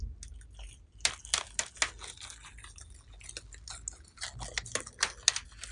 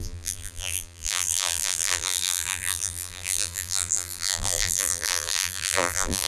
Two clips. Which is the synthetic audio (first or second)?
second